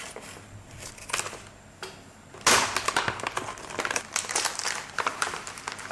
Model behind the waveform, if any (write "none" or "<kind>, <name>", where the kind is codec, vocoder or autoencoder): none